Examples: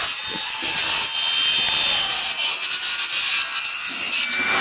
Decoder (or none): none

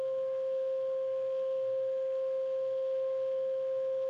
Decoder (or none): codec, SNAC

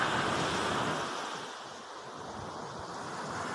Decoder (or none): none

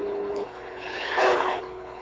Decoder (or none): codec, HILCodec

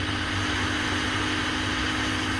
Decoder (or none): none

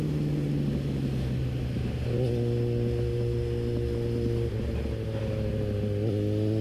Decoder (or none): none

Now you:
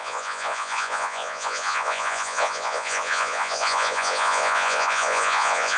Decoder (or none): vocoder, Vocos